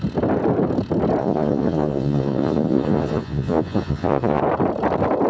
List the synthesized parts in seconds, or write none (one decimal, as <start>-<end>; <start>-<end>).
1.2-4.4